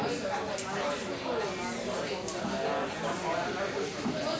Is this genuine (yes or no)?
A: yes